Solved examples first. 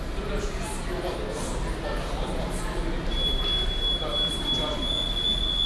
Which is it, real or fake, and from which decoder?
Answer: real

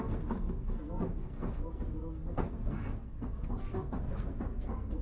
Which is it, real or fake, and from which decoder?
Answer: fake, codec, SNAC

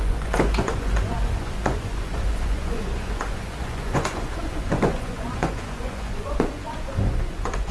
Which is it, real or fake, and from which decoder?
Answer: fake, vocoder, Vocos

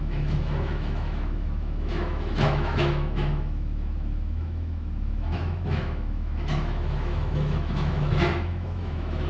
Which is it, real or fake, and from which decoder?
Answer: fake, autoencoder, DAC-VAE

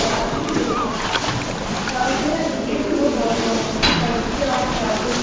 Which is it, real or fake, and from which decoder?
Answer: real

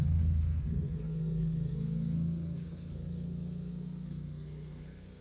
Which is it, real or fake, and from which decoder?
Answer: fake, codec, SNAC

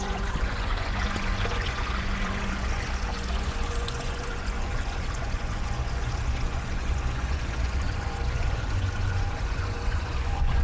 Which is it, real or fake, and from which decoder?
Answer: fake, vocoder, Vocos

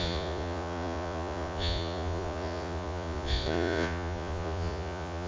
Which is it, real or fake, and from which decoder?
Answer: fake, vocoder, Vocos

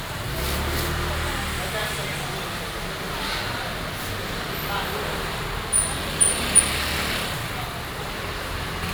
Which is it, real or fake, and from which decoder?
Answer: real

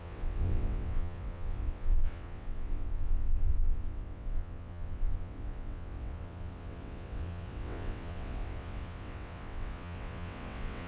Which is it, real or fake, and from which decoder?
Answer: fake, vocoder, WaveNeXt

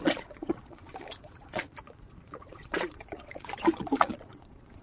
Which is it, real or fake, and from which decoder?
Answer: fake, vocoder, Vocos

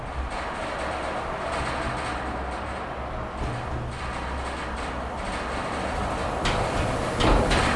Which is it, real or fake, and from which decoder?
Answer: real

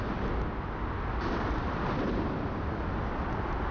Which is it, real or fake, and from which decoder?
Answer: real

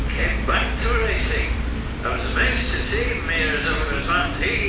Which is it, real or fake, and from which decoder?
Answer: real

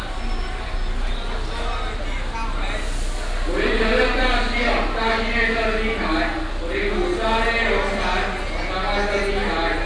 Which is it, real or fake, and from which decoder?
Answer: real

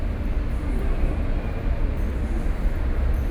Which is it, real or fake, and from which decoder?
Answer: real